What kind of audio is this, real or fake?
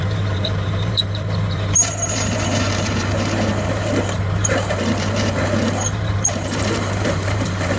fake